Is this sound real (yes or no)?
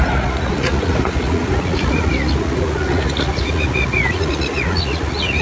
no